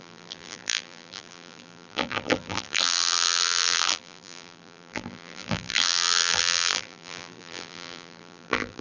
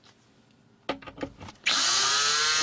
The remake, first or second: first